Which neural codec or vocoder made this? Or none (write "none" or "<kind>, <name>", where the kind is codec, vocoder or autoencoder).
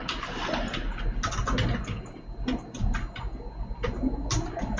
none